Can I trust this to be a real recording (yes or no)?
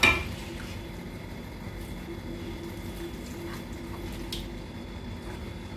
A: yes